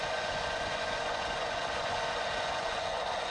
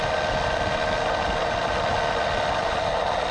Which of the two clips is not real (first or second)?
first